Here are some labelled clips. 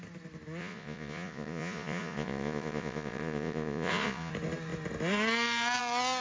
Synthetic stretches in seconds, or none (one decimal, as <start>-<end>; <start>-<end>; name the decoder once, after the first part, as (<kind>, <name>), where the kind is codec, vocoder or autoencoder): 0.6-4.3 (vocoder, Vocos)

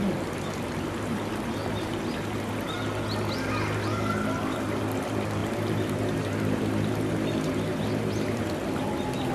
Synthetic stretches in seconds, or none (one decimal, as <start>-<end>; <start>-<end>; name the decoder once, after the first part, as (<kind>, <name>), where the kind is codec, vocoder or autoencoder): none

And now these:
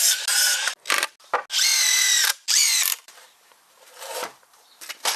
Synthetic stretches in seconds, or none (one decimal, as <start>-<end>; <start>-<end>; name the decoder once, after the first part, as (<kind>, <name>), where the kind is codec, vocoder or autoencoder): 1.7-4.8 (vocoder, BigVGAN v2)